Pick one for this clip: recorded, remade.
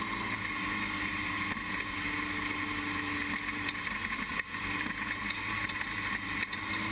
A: recorded